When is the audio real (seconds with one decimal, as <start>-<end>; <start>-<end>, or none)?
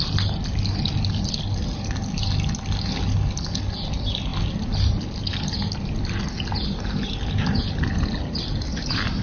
0.0-9.2